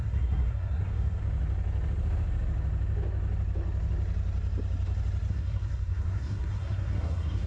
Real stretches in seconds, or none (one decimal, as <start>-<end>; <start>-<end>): 1.2-5.3